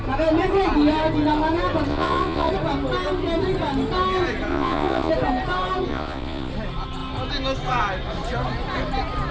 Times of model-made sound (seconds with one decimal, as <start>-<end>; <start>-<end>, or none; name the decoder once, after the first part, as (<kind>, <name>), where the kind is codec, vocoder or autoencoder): 1.9-2.5 (vocoder, Vocos); 4.5-5.1; 5.9-6.5